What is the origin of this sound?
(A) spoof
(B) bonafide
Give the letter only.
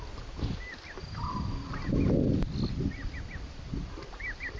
B